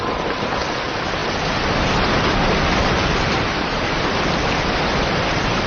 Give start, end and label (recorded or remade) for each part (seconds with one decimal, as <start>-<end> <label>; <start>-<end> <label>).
0.0-5.7 remade